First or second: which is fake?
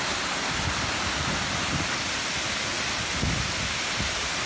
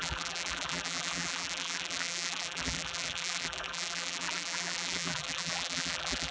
second